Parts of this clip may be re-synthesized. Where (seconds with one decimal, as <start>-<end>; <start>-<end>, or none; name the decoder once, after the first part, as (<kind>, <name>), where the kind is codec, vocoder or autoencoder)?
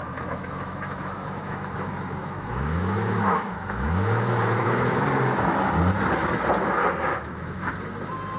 0.0-5.0 (autoencoder, DAC-VAE); 7.1-7.7